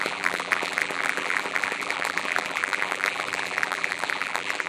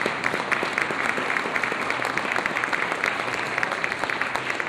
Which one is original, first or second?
second